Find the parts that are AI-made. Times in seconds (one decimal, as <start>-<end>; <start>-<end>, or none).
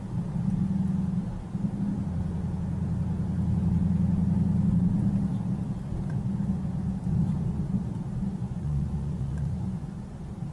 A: 8.4-10.0